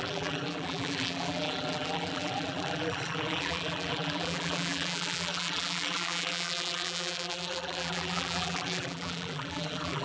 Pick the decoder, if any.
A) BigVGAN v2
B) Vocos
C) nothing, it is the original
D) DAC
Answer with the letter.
A